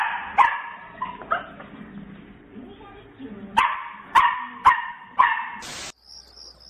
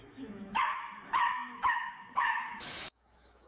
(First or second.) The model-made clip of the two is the second